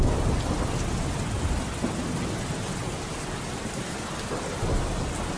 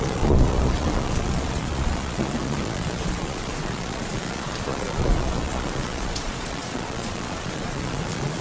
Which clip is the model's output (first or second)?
second